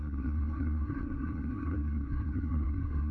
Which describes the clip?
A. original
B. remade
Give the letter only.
B